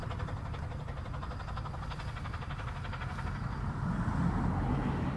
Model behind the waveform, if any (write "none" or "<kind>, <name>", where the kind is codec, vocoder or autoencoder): none